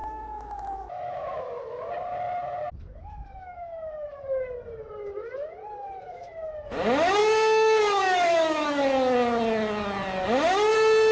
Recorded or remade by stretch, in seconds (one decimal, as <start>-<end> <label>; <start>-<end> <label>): 0.0-1.6 remade; 1.6-3.0 recorded; 3.0-4.2 remade; 4.2-7.2 recorded; 7.2-8.8 remade; 8.8-11.1 recorded